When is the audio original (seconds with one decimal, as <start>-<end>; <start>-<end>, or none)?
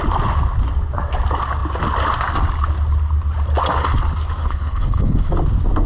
0.0-4.4; 5.3-5.9